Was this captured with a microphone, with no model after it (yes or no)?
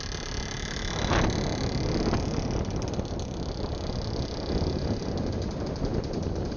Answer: yes